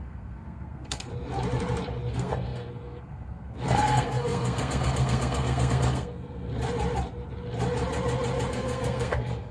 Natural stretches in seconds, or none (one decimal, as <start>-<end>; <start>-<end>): 1.1-2.1; 6.5-8.5